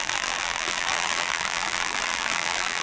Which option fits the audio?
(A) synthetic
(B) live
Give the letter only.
A